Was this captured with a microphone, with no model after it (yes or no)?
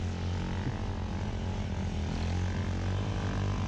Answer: yes